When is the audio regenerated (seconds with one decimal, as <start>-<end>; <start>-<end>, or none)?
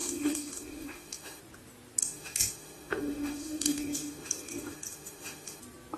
0.0-1.4; 2.0-5.6